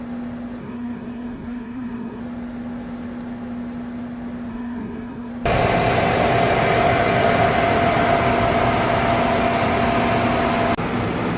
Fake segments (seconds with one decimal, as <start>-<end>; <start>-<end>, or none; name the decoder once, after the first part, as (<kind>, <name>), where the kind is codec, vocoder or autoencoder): 0.6-2.2 (codec, SNAC); 4.5-5.3